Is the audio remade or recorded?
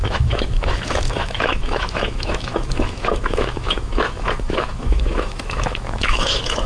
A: remade